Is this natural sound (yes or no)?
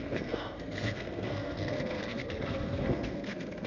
no